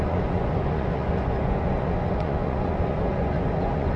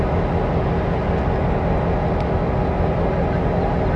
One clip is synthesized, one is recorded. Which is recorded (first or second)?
second